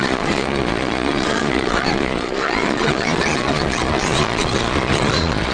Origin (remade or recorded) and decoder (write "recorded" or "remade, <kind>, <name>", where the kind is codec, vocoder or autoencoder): remade, vocoder, Vocos